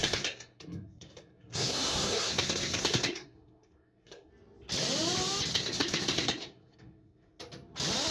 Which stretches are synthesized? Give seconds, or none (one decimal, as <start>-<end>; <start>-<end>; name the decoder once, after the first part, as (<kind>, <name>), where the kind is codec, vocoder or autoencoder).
0.0-4.3 (codec, SNAC); 5.5-7.4